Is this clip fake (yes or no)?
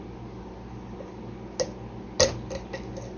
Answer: no